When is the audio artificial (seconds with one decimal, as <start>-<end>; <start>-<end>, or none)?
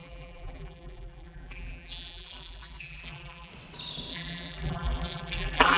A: 0.0-3.5; 4.1-5.8